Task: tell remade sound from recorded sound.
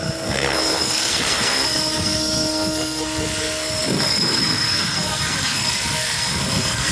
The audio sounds remade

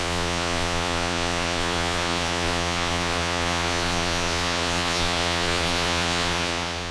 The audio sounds remade